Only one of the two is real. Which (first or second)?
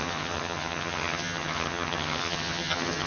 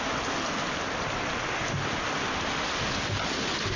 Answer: second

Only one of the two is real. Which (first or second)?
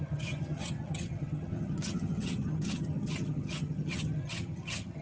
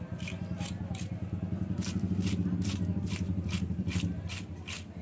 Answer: second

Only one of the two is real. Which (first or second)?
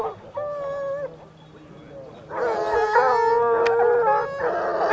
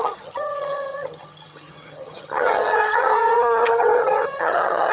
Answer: first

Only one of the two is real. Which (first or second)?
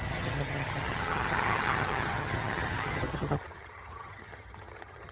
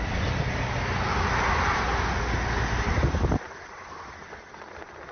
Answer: second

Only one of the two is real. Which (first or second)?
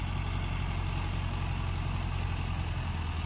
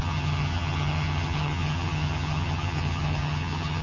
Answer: first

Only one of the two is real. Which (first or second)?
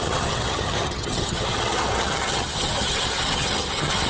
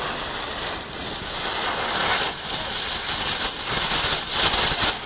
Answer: second